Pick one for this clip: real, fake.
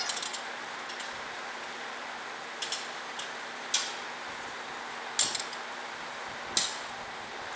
real